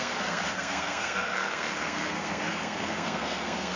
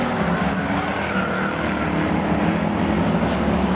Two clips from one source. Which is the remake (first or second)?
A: first